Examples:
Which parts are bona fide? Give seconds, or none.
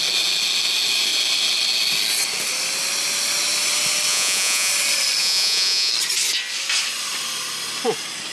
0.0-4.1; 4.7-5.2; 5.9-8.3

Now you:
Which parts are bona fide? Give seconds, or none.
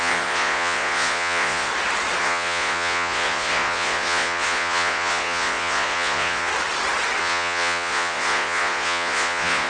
1.7-2.2; 6.5-7.2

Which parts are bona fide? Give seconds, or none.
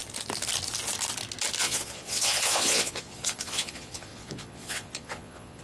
0.0-1.6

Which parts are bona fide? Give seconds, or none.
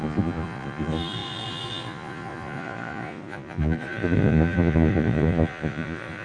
none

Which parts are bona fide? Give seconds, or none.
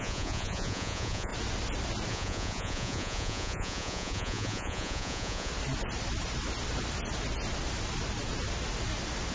1.3-2.1; 5.5-9.3